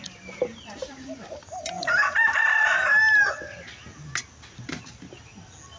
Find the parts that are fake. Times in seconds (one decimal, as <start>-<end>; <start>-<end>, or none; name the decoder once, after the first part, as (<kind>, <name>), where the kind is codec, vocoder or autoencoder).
0.5-3.3 (vocoder, BigVGAN v2)